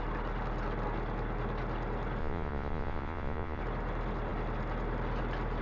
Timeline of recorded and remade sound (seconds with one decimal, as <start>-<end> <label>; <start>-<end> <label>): 0.0-2.2 recorded; 2.2-3.6 remade; 3.6-5.6 recorded